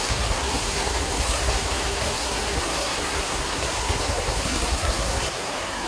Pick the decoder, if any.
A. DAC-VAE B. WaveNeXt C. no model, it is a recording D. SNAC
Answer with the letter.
D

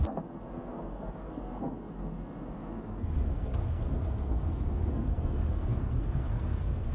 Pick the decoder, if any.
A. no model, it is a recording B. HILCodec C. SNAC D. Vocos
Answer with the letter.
C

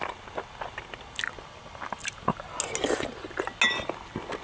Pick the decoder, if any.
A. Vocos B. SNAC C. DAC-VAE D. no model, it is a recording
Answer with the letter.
D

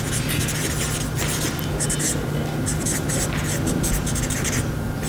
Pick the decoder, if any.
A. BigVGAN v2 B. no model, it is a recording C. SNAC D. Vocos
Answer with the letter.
B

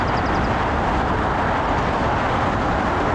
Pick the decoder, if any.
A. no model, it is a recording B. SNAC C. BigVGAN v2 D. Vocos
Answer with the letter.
A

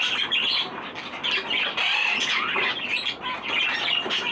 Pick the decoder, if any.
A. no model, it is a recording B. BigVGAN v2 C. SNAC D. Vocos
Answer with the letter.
A